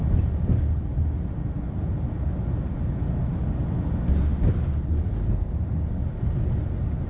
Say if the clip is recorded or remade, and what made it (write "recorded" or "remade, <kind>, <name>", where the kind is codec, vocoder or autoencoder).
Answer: recorded